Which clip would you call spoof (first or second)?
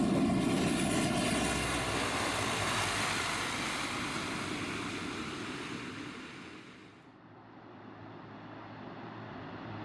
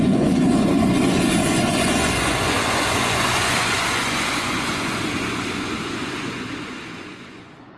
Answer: second